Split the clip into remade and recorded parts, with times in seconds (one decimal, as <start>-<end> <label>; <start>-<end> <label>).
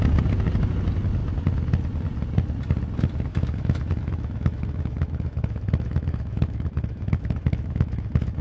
0.0-3.3 recorded; 3.3-8.4 remade